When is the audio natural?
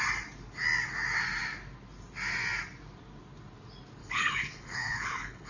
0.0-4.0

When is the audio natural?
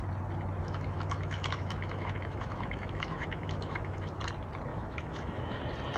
0.0-0.6; 4.2-4.7; 5.6-6.0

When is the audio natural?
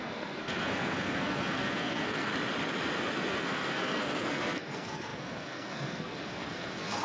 2.3-3.3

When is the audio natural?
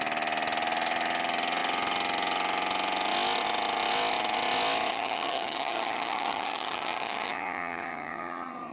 0.0-4.9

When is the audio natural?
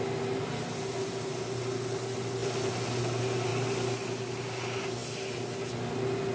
0.0-6.3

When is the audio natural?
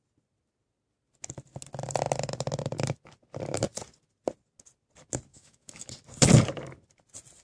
0.0-5.3; 5.9-7.4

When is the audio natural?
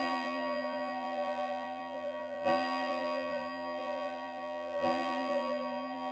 none